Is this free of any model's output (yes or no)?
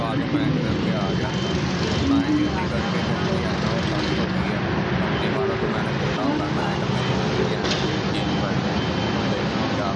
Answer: yes